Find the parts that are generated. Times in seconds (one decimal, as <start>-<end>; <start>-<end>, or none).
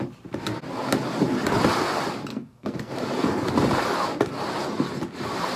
2.3-2.9